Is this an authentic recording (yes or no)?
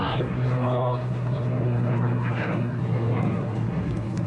no